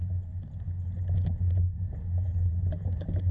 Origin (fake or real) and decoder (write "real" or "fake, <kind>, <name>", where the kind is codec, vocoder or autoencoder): real